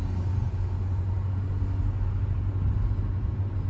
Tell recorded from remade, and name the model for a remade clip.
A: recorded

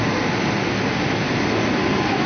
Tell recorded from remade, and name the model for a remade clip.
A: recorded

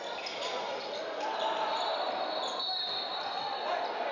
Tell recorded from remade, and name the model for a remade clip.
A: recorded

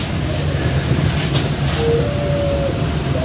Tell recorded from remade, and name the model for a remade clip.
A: recorded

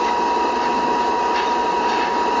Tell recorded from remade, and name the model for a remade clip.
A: recorded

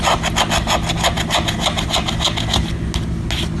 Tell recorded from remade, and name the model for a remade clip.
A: recorded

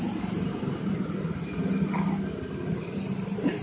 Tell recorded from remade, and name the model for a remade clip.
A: recorded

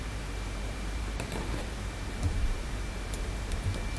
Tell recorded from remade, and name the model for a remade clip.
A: remade, vocoder, BigVGAN v2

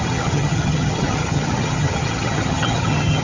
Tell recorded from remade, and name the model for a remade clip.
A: remade, vocoder, HiFi-GAN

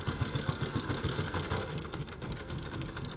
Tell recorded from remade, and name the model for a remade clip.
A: remade, codec, SNAC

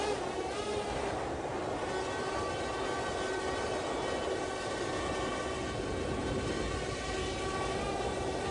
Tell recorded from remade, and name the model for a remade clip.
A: recorded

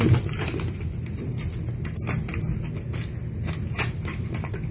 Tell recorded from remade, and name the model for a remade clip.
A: recorded